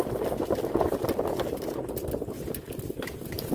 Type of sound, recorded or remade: recorded